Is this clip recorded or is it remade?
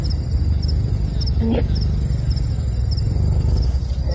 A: recorded